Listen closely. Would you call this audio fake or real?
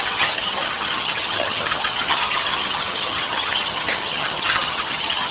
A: fake